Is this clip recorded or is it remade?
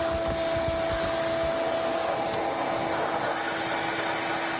recorded